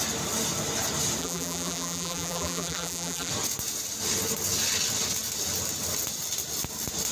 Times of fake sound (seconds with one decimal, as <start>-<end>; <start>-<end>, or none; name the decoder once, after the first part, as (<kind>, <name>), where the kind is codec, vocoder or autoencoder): 1.2-3.3 (vocoder, BigVGAN v2)